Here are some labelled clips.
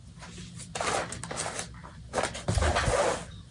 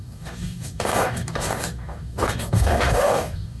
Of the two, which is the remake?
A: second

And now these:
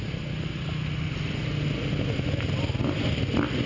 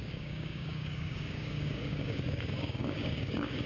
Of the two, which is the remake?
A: second